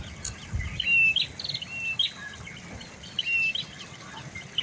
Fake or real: real